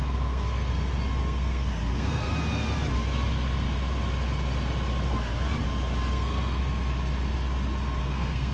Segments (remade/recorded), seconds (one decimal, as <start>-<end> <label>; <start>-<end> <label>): 0.0-0.7 remade; 0.7-1.2 recorded; 1.2-2.3 remade; 2.3-6.1 recorded; 6.1-6.6 remade; 6.6-8.0 recorded; 8.0-8.5 remade